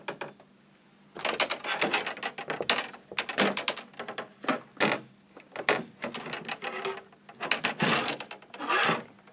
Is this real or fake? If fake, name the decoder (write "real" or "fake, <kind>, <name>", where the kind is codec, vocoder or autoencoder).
real